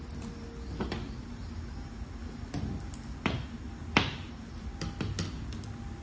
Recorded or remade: recorded